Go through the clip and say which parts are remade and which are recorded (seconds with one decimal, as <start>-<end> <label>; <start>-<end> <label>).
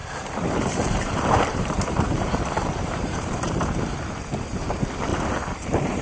0.0-3.6 remade; 3.6-5.1 recorded; 5.1-6.0 remade